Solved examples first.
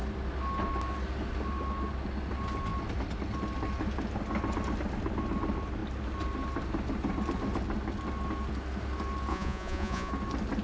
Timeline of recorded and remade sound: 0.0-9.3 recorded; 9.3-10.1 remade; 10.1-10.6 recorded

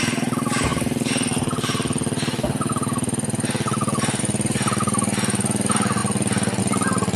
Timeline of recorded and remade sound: 0.0-6.0 remade; 6.0-6.6 recorded; 6.6-7.2 remade

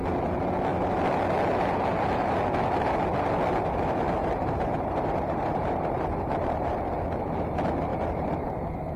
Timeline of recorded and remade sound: 0.0-4.2 recorded; 4.2-6.9 remade; 6.9-7.9 recorded; 7.9-9.0 remade

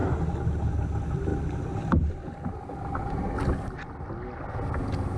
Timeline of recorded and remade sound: 0.0-5.2 recorded